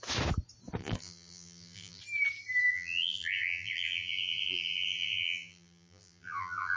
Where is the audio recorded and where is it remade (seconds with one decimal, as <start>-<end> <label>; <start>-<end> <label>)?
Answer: 0.0-0.8 recorded; 0.8-2.0 remade; 2.0-2.7 recorded; 2.7-6.8 remade

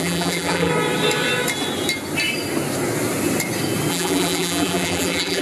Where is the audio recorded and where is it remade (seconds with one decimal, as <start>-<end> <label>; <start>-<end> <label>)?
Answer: 0.0-0.7 remade; 0.7-3.9 recorded; 3.9-5.4 remade

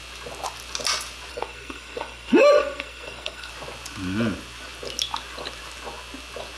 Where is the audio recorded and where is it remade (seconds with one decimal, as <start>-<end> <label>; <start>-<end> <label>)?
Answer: 0.0-1.3 recorded; 1.3-3.5 remade; 3.5-6.6 recorded

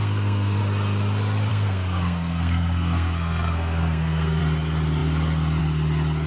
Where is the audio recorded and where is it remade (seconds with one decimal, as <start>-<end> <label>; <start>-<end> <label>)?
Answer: 0.0-0.6 remade; 0.6-1.5 recorded; 1.5-4.4 remade; 4.4-6.3 recorded

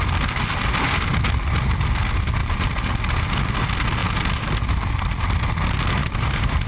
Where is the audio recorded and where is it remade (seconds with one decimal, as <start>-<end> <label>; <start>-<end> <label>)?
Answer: 0.0-2.4 recorded; 2.4-3.3 remade; 3.3-6.0 recorded; 6.0-6.7 remade

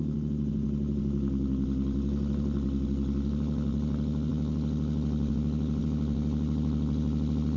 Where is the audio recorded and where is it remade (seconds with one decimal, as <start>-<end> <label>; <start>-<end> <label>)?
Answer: 0.0-7.6 recorded

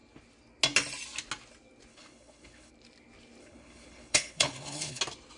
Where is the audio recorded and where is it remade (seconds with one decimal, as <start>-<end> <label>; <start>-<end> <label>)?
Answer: 0.0-1.9 recorded; 1.9-2.7 remade; 2.7-3.4 recorded; 3.4-5.0 remade; 5.0-5.4 recorded